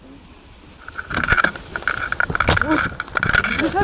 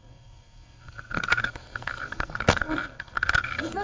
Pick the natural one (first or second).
first